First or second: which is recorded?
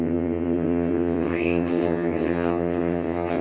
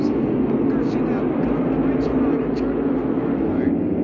second